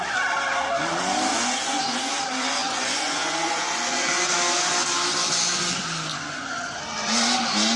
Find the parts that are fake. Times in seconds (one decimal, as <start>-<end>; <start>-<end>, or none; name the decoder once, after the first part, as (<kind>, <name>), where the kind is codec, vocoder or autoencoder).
1.3-2.1 (vocoder, Vocos); 2.6-4.2; 6.1-6.8

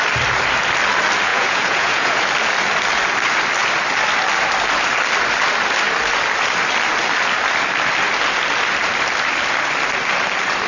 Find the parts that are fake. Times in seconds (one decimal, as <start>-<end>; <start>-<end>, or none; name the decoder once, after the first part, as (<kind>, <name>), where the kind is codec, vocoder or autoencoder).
1.3-2.2 (vocoder, Vocos)

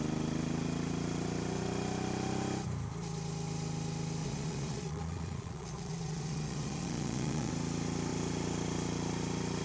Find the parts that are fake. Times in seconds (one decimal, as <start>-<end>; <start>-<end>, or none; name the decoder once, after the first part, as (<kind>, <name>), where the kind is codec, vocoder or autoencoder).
4.2-7.5 (vocoder, Vocos)

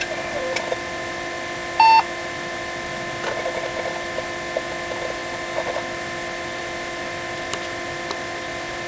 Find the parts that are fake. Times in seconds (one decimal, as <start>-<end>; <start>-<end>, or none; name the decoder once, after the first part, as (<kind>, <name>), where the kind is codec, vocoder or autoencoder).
none

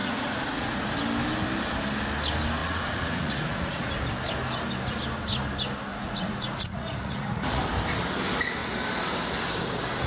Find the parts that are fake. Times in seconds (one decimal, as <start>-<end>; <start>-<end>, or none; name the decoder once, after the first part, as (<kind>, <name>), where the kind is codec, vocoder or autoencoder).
0.0-0.9 (vocoder, Vocos); 2.6-3.9; 5.9-7.6